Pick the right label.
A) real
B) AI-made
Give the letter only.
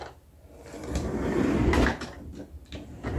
A